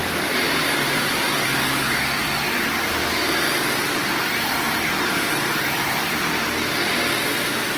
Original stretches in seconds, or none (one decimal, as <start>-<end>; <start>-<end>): none